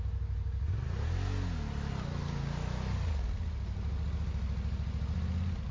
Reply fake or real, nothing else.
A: real